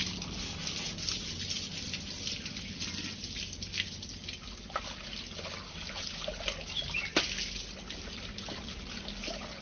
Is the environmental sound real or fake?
real